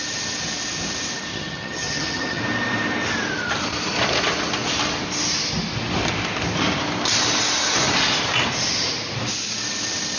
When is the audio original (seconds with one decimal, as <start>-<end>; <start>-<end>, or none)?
0.0-1.3; 2.4-10.2